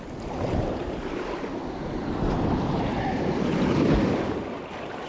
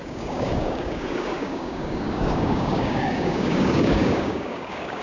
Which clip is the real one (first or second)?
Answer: first